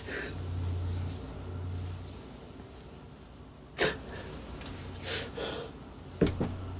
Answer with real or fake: real